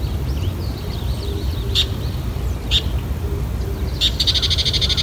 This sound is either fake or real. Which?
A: real